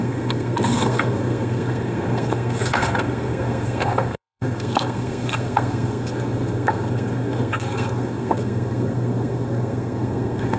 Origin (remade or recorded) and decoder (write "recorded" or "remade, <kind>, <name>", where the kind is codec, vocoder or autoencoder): remade, codec, SNAC